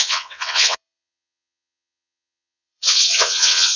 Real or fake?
fake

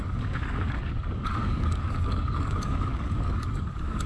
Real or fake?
fake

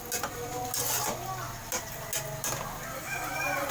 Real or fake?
real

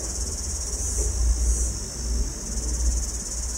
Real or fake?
real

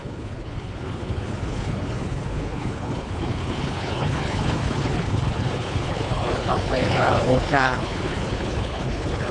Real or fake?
fake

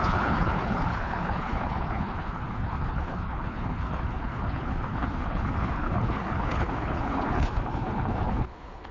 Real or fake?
fake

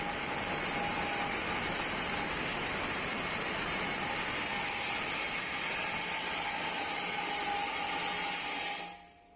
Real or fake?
real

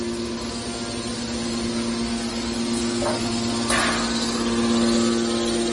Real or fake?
real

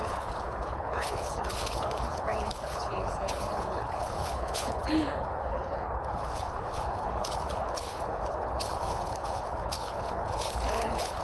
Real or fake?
fake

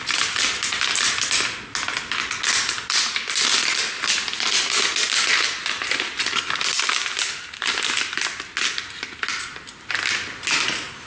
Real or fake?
real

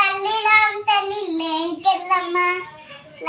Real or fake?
fake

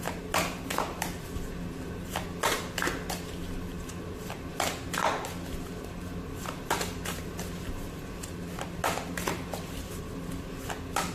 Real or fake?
real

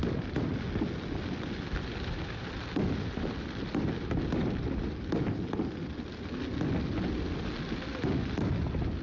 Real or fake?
real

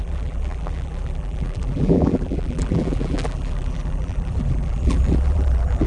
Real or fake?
fake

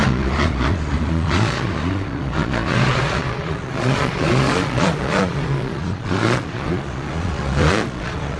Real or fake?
fake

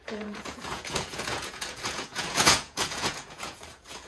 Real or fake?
fake